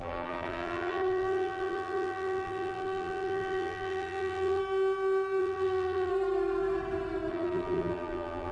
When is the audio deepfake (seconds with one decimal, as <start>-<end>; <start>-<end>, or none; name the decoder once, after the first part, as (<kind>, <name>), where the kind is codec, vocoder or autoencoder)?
0.0-4.6 (vocoder, BigVGAN v2); 5.4-6.1; 7.3-8.5